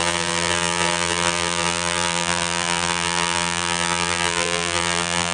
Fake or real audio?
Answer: fake